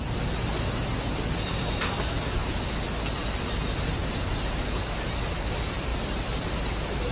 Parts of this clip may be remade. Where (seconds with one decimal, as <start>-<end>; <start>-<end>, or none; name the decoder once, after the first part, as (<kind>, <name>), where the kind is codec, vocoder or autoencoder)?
none